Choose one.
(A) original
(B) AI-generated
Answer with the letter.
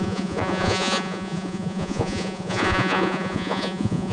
B